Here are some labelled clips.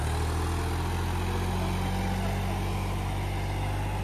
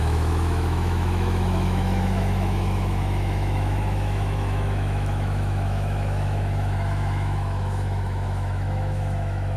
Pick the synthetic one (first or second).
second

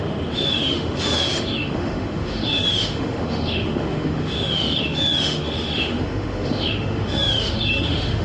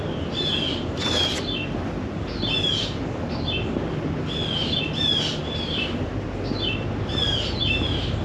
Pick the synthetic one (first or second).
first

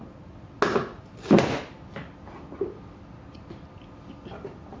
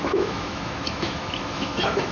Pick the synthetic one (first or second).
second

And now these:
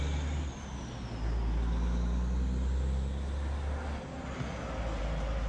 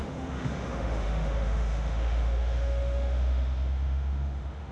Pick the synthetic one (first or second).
second